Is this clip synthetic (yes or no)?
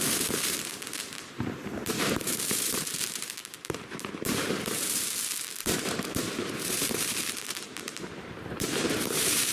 yes